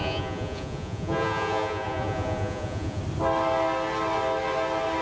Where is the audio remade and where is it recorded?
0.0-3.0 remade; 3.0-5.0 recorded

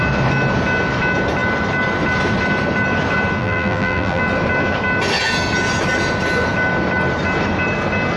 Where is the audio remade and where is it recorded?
0.0-3.4 recorded; 3.4-4.2 remade; 4.2-8.2 recorded

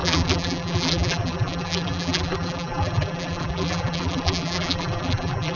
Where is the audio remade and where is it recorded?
0.0-5.6 remade

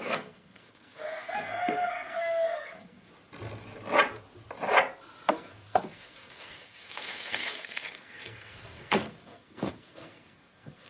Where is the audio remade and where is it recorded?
0.0-3.1 remade; 3.1-5.3 recorded; 5.3-10.9 remade

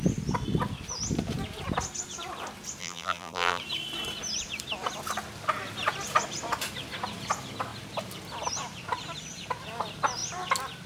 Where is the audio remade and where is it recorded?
0.0-2.8 recorded; 2.8-3.6 remade; 3.6-10.9 recorded

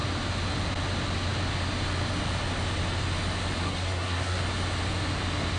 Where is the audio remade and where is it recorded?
0.0-3.6 recorded; 3.6-4.4 remade; 4.4-5.6 recorded

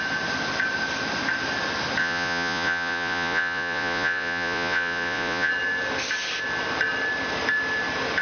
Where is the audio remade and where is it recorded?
0.0-2.0 recorded; 2.0-5.5 remade; 5.5-8.2 recorded